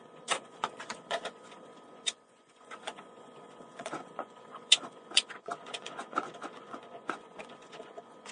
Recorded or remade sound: remade